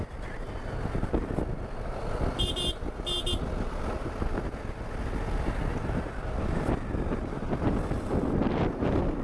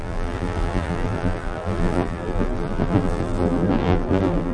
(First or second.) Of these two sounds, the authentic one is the first